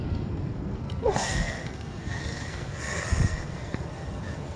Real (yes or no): no